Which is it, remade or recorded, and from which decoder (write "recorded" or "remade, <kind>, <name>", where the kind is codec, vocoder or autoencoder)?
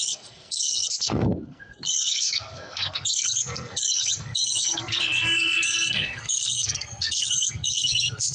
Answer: remade, codec, SNAC